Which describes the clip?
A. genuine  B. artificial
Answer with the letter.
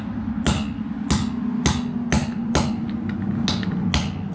A